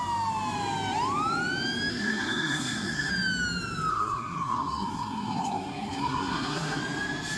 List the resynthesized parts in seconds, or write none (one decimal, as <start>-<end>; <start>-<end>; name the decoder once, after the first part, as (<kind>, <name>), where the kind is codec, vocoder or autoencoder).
1.9-3.1 (codec, SNAC); 3.9-6.8